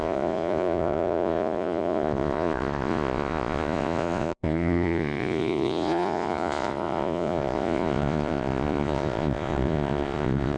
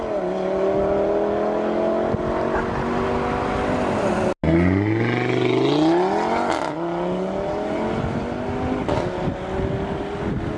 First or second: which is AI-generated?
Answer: first